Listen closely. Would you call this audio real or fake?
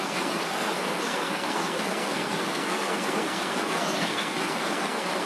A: fake